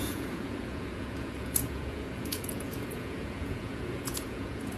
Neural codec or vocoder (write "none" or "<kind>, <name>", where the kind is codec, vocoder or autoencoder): vocoder, Vocos